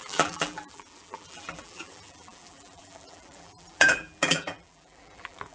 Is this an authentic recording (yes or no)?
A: no